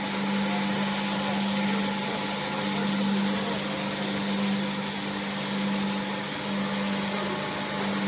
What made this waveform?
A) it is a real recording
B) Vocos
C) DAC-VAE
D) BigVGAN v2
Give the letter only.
A